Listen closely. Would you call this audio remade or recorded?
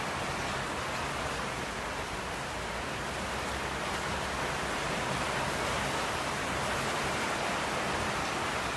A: recorded